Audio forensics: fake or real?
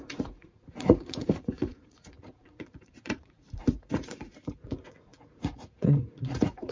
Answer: fake